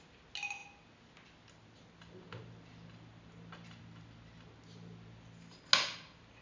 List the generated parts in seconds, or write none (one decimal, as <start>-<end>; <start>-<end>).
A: none